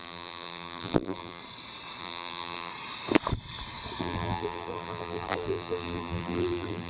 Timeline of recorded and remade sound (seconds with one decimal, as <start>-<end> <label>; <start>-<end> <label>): 0.0-1.4 remade; 1.4-2.0 recorded; 2.0-2.7 remade; 2.7-4.0 recorded; 4.0-6.9 remade